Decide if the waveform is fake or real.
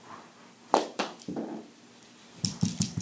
fake